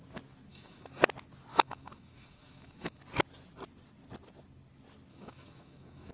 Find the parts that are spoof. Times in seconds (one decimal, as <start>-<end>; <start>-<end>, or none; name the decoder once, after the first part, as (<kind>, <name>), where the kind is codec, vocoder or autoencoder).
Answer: 0.5-1.0 (autoencoder, DAC-VAE); 1.5-3.0; 5.1-6.1